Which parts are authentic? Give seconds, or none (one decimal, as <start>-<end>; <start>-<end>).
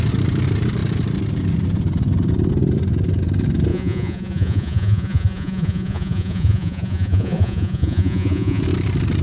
0.0-3.7; 8.6-9.2